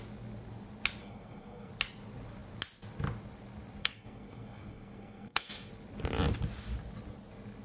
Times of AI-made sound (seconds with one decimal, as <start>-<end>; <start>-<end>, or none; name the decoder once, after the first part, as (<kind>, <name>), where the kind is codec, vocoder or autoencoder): 1.0-1.7 (codec, SNAC); 3.8-5.7